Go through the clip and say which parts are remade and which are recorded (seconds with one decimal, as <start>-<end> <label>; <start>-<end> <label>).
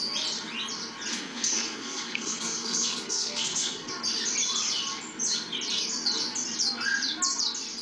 0.0-1.1 recorded; 1.1-3.9 remade; 3.9-7.8 recorded